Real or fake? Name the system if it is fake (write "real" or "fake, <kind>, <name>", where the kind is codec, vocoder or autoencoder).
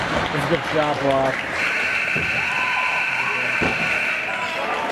real